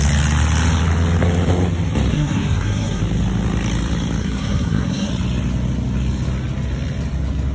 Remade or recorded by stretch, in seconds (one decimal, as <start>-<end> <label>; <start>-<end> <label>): 0.0-2.1 recorded; 2.1-3.0 remade; 3.0-4.2 recorded; 4.2-5.1 remade; 5.1-7.5 recorded